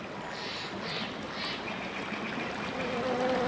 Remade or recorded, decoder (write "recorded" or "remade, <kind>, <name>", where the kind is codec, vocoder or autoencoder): recorded